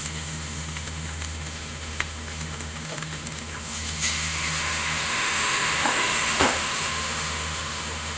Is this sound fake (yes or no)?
yes